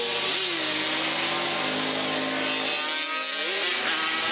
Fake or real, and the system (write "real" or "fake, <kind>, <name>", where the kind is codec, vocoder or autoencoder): real